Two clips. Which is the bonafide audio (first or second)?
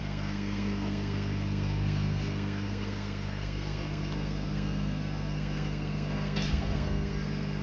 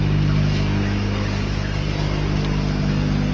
second